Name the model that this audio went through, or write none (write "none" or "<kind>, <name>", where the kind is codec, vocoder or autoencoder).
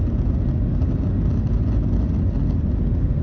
none